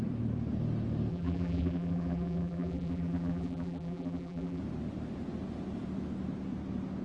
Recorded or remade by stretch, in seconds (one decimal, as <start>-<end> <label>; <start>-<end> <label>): 0.0-1.1 recorded; 1.1-4.6 remade; 4.6-7.0 recorded